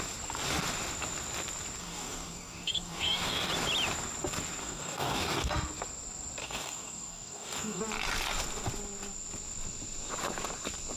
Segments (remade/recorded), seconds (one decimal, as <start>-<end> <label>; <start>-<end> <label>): 0.0-1.8 recorded; 1.8-3.5 remade; 3.5-4.6 recorded; 4.6-5.5 remade; 5.5-6.4 recorded; 6.4-7.8 remade; 7.8-11.0 recorded